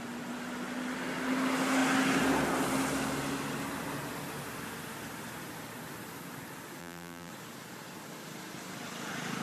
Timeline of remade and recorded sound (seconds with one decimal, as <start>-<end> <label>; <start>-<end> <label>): 0.0-6.8 recorded; 6.8-7.3 remade; 7.3-9.4 recorded